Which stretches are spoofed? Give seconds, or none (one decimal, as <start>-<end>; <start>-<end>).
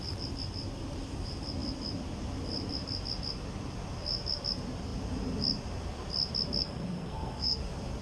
6.6-7.6